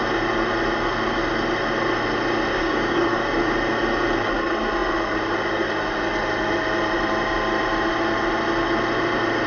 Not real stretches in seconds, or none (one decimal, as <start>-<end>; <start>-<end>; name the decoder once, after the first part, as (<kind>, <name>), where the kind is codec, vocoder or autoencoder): 2.5-3.4 (codec, DAC)